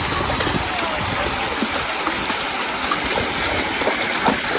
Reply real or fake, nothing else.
real